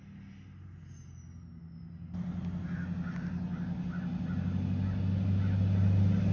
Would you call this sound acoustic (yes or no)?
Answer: yes